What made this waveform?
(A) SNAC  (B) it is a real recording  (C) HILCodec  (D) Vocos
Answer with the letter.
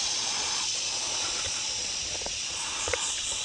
D